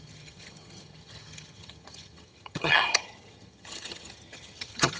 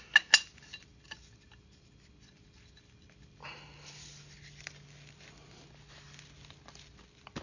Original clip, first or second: second